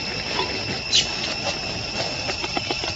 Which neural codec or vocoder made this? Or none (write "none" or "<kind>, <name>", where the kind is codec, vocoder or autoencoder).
none